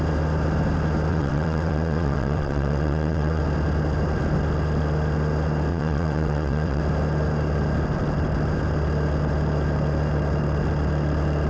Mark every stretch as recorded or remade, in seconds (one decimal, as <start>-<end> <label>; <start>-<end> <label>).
0.0-1.1 recorded; 1.1-3.4 remade; 3.4-5.7 recorded; 5.7-6.8 remade; 6.8-11.5 recorded